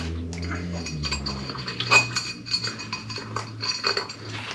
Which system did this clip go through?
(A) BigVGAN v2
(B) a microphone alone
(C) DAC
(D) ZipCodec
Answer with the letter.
B